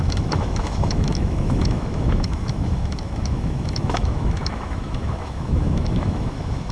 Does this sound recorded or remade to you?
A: remade